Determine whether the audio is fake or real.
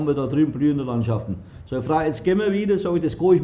real